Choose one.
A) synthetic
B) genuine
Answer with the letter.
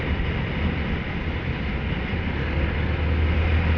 B